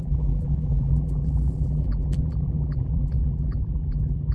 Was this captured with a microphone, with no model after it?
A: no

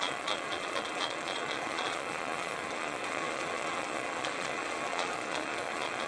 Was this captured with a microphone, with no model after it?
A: no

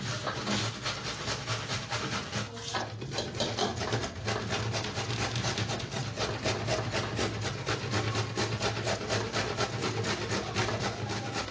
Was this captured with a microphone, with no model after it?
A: yes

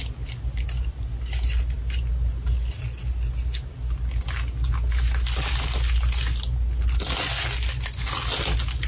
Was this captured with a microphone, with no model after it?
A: yes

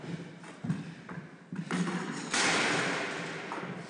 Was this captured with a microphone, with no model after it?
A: yes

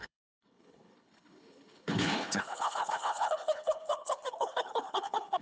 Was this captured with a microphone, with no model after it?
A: no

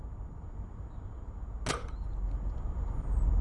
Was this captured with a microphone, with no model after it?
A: yes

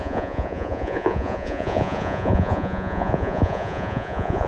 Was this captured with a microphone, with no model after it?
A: no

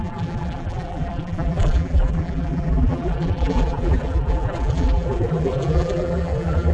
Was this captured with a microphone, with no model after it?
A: no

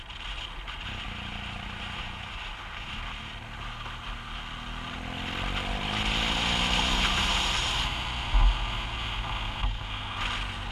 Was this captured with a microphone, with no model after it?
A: yes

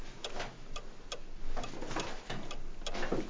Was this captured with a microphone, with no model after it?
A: yes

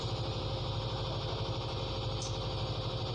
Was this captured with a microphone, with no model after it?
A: no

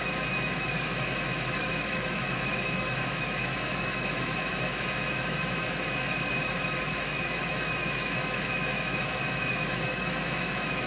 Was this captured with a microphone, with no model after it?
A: no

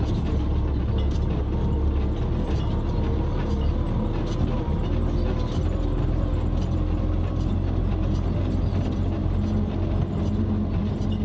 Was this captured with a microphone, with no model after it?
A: yes